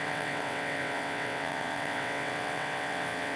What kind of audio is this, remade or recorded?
remade